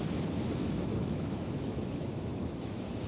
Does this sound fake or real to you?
fake